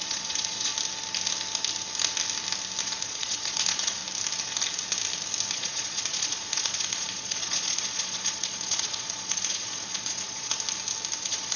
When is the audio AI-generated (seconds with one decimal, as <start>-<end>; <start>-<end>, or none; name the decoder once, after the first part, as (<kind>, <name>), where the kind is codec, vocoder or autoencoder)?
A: 0.0-0.7 (vocoder, Vocos); 2.8-4.0; 5.5-10.5; 11.2-11.6